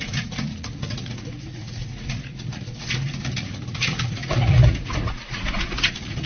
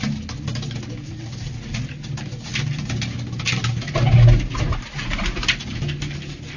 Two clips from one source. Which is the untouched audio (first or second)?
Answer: second